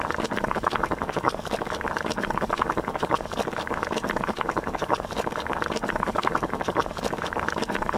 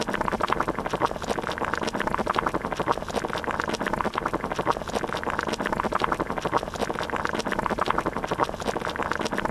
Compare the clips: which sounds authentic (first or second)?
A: second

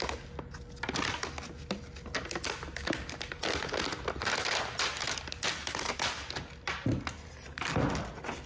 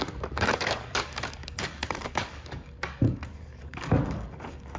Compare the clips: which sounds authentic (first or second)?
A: first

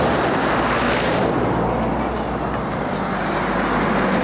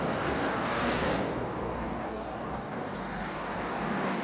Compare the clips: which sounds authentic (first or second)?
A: first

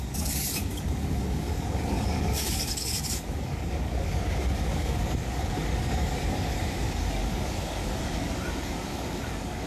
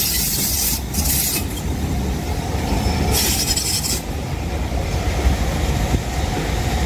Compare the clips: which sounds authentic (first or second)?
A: second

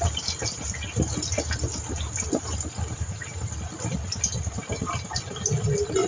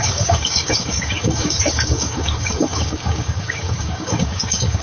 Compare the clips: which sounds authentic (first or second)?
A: first